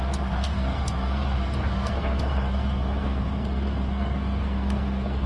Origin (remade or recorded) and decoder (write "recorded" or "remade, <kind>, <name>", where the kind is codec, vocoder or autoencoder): remade, codec, SNAC